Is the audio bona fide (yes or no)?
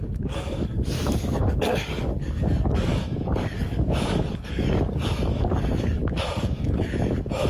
no